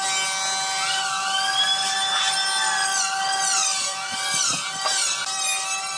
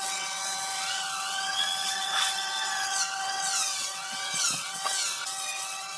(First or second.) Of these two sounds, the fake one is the second